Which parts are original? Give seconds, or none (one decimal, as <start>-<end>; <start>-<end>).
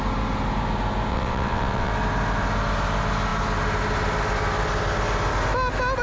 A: 0.0-1.1; 1.9-6.0